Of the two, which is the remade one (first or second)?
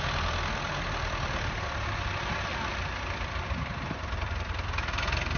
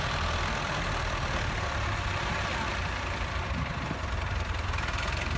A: second